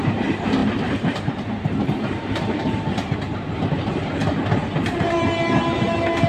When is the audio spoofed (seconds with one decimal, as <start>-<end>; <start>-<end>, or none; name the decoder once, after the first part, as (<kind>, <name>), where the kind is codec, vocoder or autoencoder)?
0.0-4.2 (vocoder, BigVGAN v2); 4.9-6.3